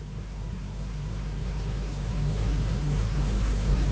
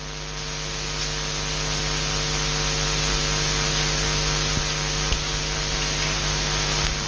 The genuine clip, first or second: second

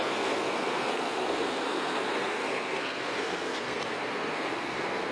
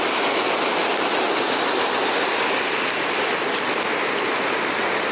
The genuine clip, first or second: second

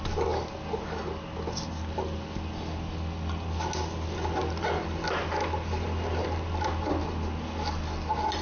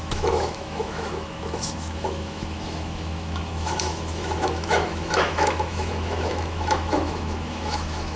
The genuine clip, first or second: first